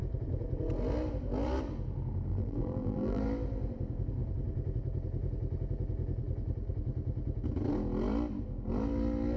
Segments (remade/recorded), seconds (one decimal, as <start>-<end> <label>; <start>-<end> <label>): 0.0-2.3 recorded; 2.3-3.2 remade; 3.2-9.4 recorded